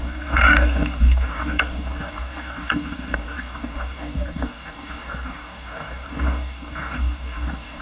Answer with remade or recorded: remade